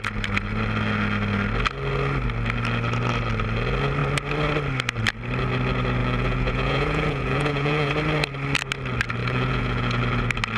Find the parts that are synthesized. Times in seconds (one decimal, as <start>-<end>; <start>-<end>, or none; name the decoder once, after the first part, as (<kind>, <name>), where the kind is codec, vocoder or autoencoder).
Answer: 6.0-7.9 (vocoder, Vocos); 9.2-10.0